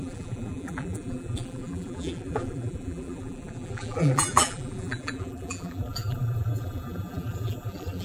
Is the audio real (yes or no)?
no